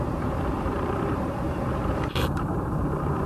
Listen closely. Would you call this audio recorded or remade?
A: remade